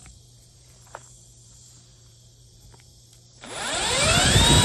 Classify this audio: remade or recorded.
remade